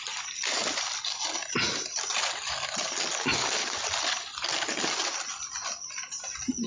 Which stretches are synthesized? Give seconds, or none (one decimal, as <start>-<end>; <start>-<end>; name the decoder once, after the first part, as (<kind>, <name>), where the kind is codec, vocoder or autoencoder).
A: none